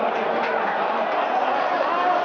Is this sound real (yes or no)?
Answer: yes